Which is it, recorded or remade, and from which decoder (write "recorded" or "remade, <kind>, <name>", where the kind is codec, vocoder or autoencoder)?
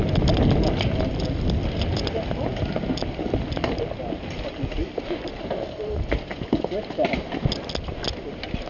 recorded